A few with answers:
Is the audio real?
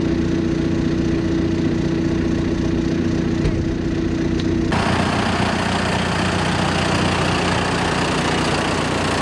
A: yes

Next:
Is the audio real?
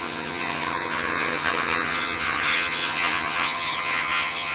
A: no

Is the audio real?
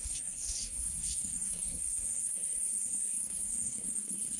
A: no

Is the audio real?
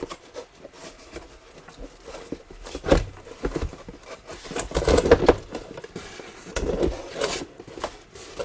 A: yes